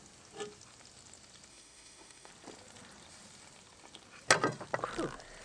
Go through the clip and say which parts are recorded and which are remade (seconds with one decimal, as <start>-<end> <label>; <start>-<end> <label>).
0.0-1.5 recorded; 1.5-2.3 remade; 2.3-5.4 recorded

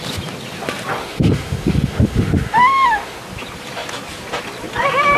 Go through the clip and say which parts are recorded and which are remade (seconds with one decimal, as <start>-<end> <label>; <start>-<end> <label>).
0.0-1.0 recorded; 1.0-3.2 remade; 3.2-5.2 recorded